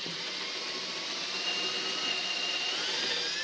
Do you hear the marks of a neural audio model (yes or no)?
yes